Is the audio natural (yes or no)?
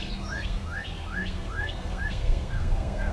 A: no